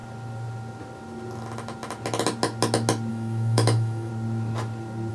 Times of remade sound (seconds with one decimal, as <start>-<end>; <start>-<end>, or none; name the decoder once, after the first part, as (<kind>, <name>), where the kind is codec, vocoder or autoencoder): 3.1-4.1 (autoencoder, DAC-VAE)